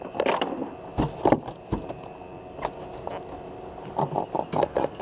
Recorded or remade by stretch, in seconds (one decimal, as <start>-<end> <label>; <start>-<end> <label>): 0.0-5.0 recorded